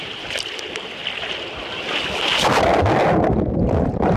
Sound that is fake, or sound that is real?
real